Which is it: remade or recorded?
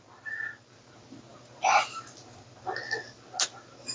recorded